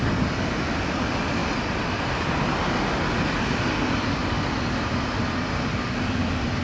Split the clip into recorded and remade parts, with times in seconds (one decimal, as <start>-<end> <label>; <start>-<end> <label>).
0.0-6.6 recorded